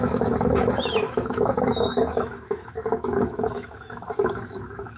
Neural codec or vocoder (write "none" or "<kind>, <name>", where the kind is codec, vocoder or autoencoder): autoencoder, DAC-VAE